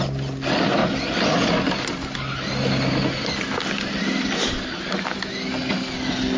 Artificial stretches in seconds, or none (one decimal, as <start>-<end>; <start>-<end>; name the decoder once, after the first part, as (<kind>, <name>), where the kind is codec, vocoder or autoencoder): none